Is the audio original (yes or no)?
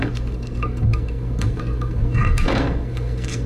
no